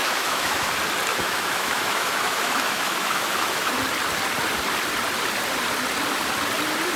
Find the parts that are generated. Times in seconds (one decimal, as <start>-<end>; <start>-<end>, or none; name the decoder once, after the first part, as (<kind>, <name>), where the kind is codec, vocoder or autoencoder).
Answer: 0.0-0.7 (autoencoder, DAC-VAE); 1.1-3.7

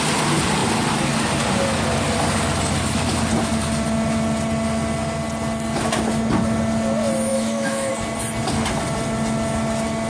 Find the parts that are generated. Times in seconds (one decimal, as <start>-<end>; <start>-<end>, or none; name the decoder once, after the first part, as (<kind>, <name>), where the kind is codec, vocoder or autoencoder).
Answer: 7.3-7.9 (autoencoder, DAC-VAE)

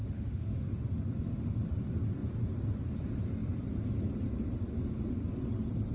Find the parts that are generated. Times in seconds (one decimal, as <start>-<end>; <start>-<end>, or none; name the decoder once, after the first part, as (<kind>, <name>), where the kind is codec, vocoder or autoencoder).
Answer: 0.0-1.6 (autoencoder, DAC-VAE)

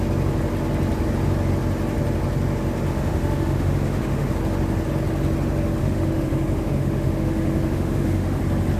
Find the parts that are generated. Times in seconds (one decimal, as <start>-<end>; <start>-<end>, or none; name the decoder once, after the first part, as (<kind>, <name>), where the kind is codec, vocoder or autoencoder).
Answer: 2.9-4.3 (autoencoder, DAC-VAE); 5.8-8.4

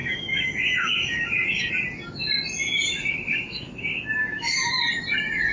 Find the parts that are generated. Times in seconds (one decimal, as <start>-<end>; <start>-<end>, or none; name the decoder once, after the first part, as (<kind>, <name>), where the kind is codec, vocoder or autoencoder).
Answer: 0.0-1.7 (autoencoder, DAC-VAE); 2.6-4.9